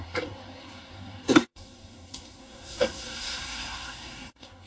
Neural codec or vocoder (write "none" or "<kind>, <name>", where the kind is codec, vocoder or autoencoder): codec, SNAC